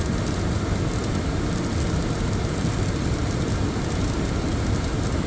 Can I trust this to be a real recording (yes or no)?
yes